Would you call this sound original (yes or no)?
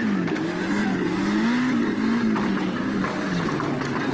yes